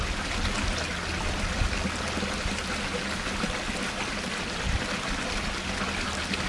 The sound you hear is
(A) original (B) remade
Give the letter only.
A